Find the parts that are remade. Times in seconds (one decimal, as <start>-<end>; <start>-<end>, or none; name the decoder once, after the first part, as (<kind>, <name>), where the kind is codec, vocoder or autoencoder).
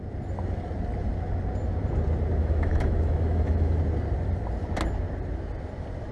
2.4-3.8 (autoencoder, DAC-VAE)